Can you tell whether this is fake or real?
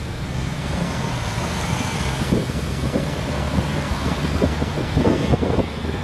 fake